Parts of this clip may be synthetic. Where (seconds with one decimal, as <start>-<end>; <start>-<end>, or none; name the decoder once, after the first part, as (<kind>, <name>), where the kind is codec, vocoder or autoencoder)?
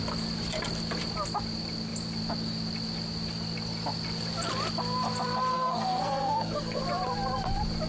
5.5-6.8 (codec, SNAC)